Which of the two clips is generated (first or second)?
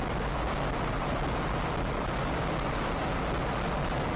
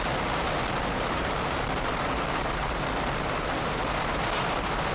second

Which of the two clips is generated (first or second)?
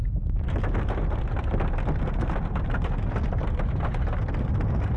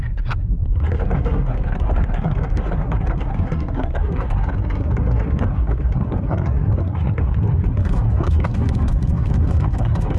second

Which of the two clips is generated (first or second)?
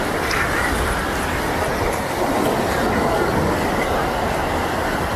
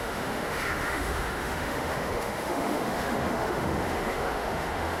second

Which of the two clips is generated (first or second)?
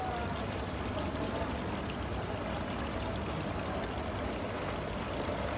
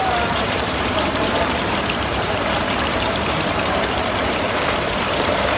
second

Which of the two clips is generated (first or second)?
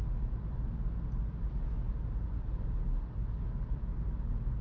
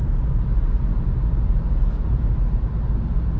second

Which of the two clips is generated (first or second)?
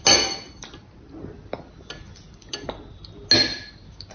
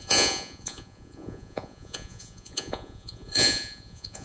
second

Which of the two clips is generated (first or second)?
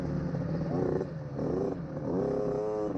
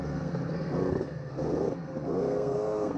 second